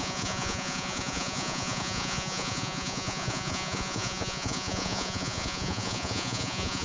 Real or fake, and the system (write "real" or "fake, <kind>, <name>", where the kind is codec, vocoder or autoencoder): fake, vocoder, Vocos